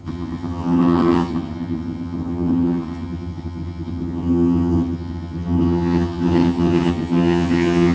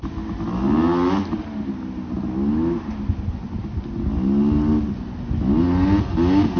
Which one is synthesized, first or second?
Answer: first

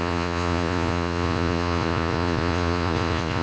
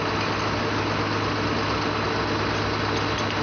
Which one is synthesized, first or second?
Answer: first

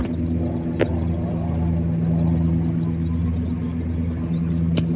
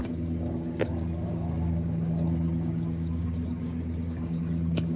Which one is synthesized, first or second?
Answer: second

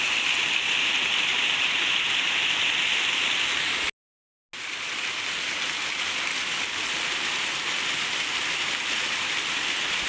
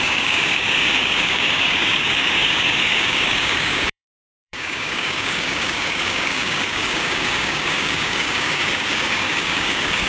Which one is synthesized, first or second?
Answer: second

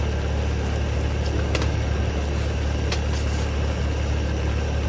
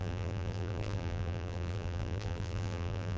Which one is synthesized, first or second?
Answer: second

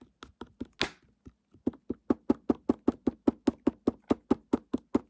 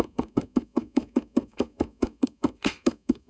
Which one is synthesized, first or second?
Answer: second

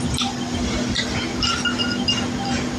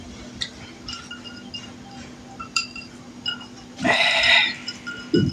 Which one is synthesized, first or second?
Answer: second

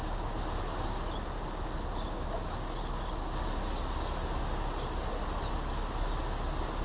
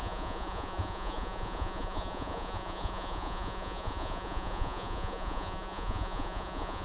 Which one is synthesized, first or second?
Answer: second